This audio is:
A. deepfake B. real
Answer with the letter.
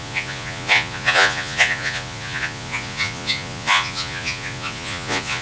A